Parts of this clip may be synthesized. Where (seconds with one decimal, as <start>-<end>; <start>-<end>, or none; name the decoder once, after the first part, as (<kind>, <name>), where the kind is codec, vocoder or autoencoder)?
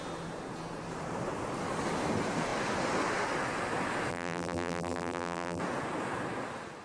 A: 4.1-5.6 (vocoder, BigVGAN v2)